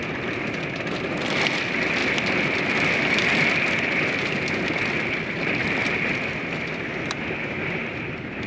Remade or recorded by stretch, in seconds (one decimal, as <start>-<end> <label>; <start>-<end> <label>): 0.0-8.5 recorded